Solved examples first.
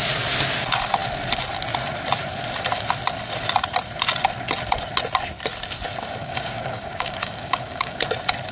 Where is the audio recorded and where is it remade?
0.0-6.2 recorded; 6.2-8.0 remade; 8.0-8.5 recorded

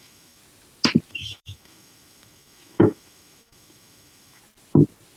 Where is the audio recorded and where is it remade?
0.0-0.4 remade; 0.4-1.1 recorded; 1.1-4.4 remade; 4.4-5.2 recorded

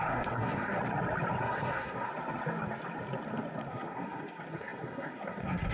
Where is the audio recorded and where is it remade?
0.0-0.8 remade; 0.8-1.4 recorded; 1.4-2.1 remade; 2.1-3.7 recorded; 3.7-5.7 remade

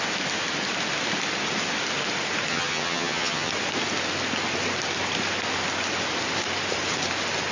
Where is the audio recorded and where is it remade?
0.0-2.5 recorded; 2.5-3.5 remade; 3.5-7.5 recorded

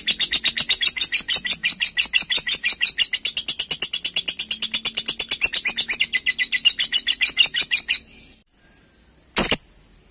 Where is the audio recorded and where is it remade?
0.0-10.1 recorded

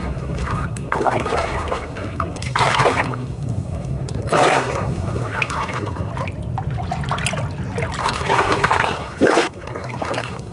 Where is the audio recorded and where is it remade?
0.0-6.1 remade; 6.1-8.0 recorded; 8.0-10.5 remade